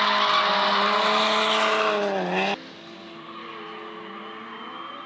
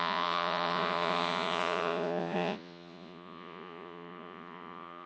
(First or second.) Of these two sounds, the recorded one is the first